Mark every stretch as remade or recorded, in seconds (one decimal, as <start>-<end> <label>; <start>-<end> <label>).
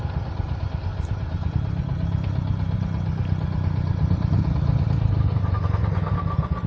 0.0-0.9 recorded; 0.9-1.5 remade; 1.5-3.9 recorded; 3.9-6.1 remade; 6.1-6.7 recorded